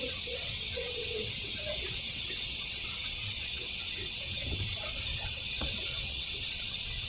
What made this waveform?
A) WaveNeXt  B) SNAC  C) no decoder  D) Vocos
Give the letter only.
A